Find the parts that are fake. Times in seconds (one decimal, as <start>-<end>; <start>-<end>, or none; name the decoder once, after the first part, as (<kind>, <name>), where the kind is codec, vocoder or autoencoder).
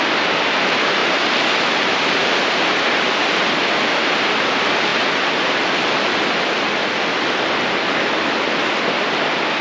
none